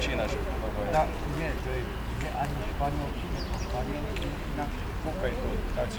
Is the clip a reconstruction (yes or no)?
no